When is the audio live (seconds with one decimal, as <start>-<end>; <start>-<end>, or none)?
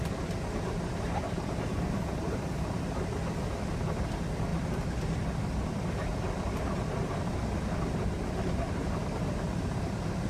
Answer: 0.0-10.3